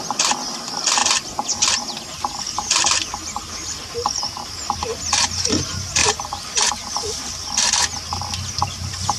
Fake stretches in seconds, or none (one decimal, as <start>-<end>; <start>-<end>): 4.9-5.6; 6.0-6.7